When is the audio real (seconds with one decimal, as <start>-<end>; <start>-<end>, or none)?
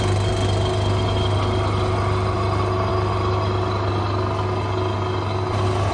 0.0-5.9